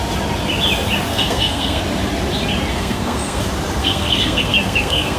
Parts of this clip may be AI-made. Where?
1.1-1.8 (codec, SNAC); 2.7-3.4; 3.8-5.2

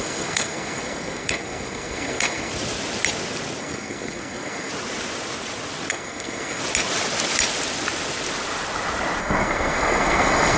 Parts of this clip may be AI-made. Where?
0.0-2.5 (codec, SNAC); 3.6-4.7; 5.9-6.6; 9.2-10.6

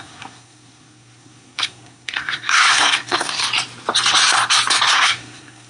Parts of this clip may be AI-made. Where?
0.0-3.4 (codec, SNAC); 4.9-5.7

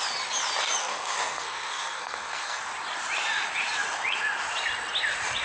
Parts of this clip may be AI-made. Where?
0.8-2.6 (codec, SNAC)

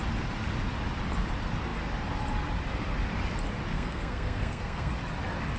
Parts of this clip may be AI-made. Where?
3.7-4.9 (codec, SNAC)

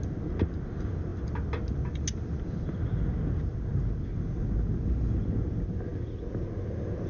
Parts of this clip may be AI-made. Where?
none